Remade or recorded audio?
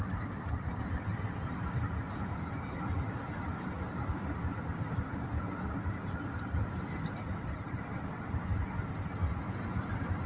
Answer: recorded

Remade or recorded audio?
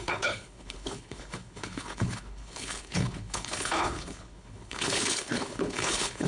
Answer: remade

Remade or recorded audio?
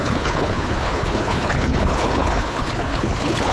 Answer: remade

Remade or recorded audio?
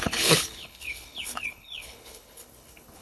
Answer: remade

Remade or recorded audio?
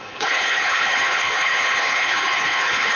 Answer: remade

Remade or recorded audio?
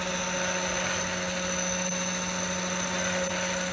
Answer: recorded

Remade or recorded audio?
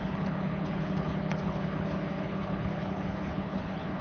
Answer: remade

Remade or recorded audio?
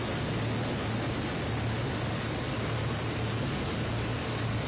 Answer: recorded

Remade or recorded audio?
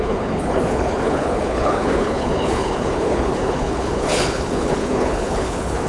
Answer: remade